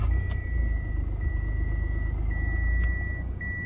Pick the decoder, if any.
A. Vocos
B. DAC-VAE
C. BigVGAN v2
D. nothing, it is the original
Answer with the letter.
D